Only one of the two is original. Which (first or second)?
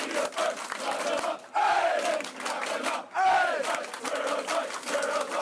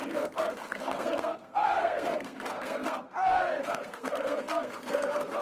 first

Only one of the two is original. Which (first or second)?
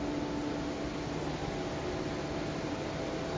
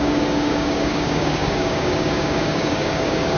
first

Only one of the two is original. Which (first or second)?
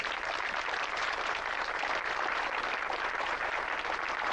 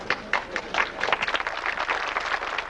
second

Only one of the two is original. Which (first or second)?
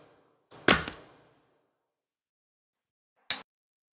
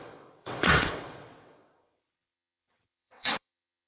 first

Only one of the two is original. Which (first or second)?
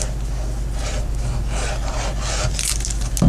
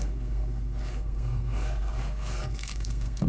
first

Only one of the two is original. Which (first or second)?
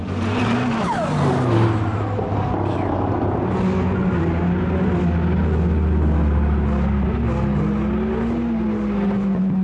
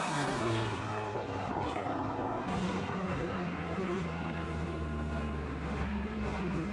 first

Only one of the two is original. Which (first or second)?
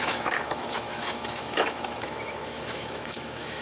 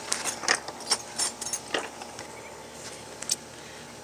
second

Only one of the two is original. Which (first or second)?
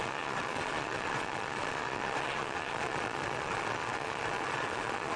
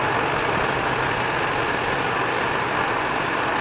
second